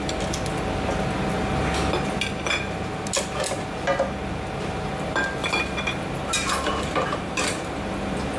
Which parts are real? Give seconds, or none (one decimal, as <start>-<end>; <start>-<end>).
0.0-5.4; 7.8-8.4

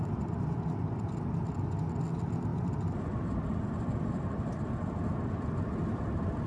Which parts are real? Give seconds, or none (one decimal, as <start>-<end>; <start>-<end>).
0.9-2.5; 4.4-6.5

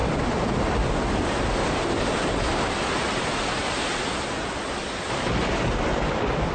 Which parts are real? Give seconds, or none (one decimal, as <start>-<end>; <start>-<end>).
0.0-6.5

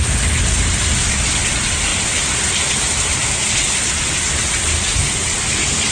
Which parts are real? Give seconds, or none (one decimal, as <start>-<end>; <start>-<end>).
0.0-1.9; 3.1-5.0

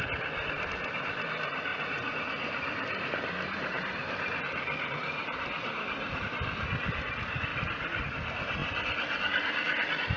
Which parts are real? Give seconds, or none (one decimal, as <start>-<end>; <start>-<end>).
0.0-1.7; 6.2-10.2

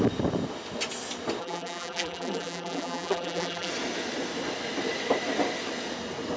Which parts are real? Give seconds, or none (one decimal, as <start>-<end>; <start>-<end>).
0.0-1.4; 3.7-6.4

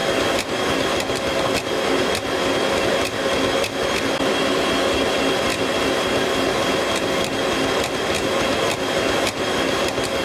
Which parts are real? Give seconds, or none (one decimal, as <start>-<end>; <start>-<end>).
0.0-10.2

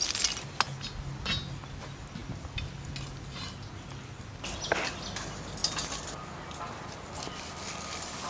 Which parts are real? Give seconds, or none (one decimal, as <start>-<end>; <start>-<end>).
0.0-5.6; 6.2-8.3